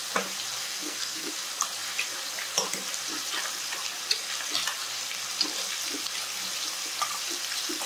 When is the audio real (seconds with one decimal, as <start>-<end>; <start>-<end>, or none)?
0.0-0.6; 1.3-7.9